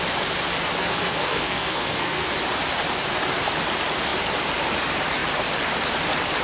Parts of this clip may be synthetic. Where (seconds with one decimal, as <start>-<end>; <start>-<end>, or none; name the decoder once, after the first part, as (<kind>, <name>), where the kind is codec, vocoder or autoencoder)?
0.8-2.3 (codec, SNAC)